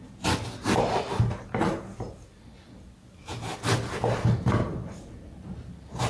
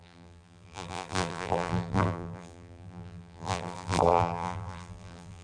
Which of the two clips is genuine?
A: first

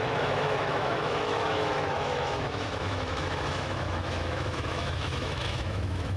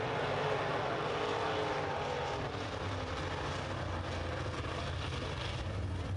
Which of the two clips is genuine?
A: second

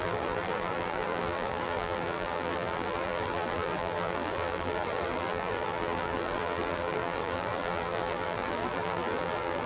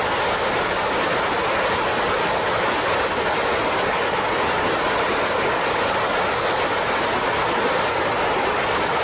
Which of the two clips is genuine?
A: second